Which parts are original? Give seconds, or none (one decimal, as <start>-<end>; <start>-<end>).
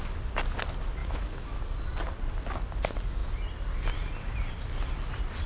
0.0-1.0; 1.6-5.5